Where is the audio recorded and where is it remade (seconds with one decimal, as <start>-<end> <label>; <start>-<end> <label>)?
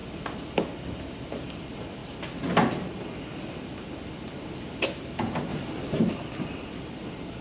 0.0-2.0 remade; 2.0-2.7 recorded; 2.7-5.5 remade; 5.5-6.0 recorded; 6.0-7.4 remade